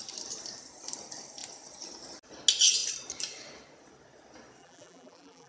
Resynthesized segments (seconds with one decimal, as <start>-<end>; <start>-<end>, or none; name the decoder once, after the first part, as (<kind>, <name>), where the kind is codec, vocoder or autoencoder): 4.6-5.5 (vocoder, BigVGAN v2)